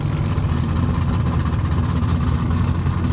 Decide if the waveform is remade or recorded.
recorded